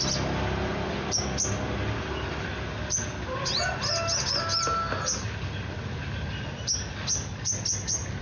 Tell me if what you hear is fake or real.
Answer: real